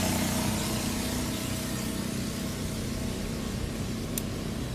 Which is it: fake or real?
real